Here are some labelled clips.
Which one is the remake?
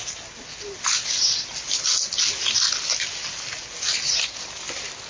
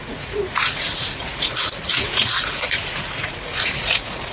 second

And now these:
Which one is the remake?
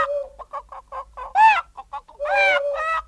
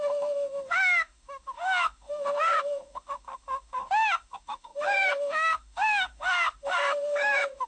second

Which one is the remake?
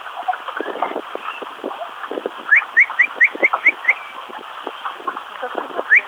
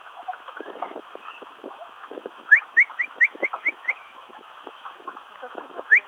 second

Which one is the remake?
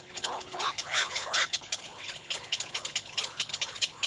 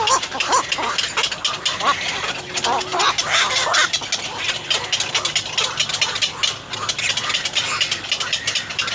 first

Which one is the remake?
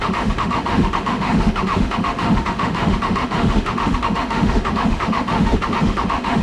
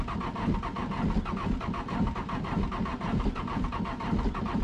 first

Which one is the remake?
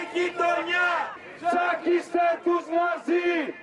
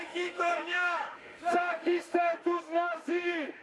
second